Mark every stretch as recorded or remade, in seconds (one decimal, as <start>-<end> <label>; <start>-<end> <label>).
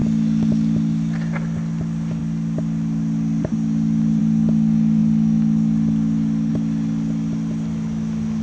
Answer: 0.0-8.4 recorded